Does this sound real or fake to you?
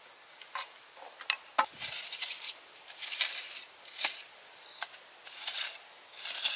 real